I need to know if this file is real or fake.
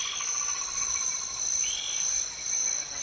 real